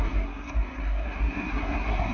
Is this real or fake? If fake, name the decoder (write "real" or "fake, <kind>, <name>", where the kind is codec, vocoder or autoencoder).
fake, codec, SNAC